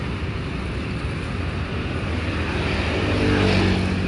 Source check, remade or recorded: recorded